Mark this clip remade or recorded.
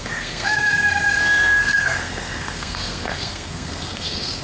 remade